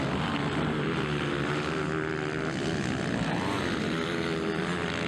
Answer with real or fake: real